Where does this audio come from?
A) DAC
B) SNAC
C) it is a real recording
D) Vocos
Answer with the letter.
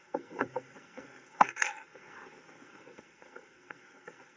B